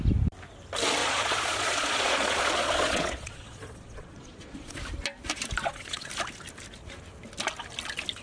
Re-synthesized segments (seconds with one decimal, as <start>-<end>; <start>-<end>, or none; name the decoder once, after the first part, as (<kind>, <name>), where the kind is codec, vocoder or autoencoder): 1.0-4.8 (vocoder, Vocos); 5.6-6.1